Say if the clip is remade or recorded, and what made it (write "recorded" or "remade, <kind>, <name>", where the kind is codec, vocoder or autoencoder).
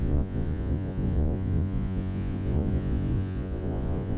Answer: remade, vocoder, Vocos